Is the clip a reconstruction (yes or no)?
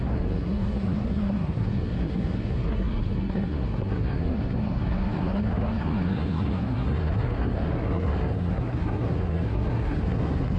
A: yes